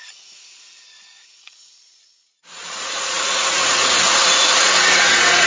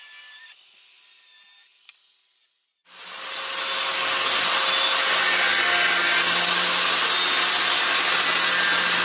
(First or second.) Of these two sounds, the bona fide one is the second